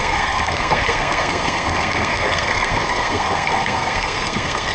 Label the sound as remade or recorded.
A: remade